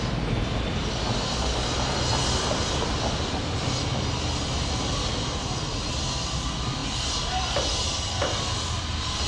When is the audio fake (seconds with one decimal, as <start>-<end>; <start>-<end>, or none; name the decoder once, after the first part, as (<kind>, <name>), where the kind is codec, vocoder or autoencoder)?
none

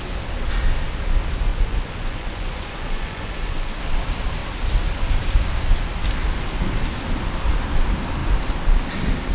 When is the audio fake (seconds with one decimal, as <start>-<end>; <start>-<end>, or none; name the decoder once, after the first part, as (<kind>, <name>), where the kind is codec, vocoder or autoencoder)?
1.5-3.8 (vocoder, Vocos)

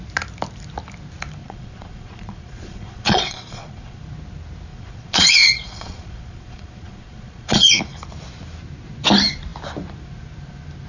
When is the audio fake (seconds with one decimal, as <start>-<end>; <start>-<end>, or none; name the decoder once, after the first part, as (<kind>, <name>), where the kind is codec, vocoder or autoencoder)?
1.4-4.0 (vocoder, Vocos); 4.7-7.8

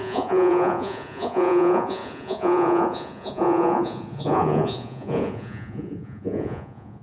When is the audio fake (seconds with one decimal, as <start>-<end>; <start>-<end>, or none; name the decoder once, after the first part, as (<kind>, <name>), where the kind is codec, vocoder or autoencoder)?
0.0-7.0 (vocoder, Vocos)

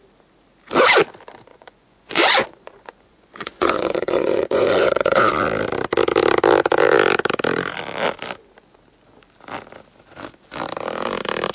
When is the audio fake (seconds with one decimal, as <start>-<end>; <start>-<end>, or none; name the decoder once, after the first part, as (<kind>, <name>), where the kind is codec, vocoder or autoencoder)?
1.5-5.3 (vocoder, Vocos)

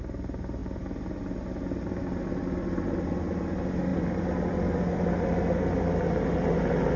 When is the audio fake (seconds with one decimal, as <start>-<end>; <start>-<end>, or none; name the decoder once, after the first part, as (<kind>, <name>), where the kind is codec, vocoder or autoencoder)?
none

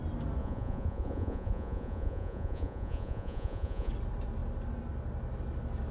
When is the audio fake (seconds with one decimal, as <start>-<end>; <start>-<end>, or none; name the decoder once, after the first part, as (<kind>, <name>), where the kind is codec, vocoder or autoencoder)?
0.4-3.9 (vocoder, Vocos)

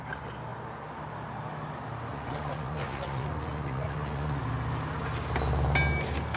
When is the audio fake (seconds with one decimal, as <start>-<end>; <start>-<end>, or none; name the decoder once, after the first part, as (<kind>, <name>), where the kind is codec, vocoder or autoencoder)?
2.1-4.4 (vocoder, Vocos)